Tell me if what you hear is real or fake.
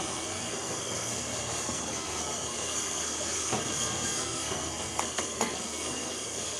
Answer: fake